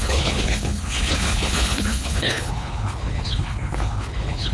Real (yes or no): no